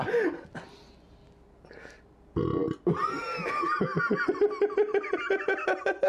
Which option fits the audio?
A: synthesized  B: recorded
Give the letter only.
B